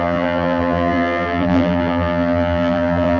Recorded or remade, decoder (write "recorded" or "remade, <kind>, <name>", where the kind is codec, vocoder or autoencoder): remade, vocoder, BigVGAN v2